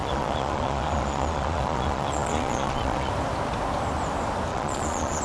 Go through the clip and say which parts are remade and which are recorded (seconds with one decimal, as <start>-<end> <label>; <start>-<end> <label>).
0.0-3.1 remade; 3.1-4.5 recorded; 4.5-5.2 remade